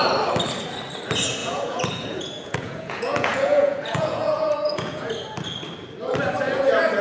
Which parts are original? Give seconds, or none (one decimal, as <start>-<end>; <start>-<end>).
0.0-1.4; 5.1-7.0